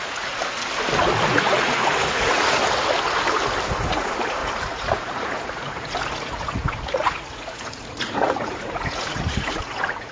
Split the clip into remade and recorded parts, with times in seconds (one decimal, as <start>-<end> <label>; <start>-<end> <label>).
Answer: 0.0-0.4 remade; 0.4-1.3 recorded; 1.3-2.6 remade; 2.6-3.7 recorded; 3.7-10.1 remade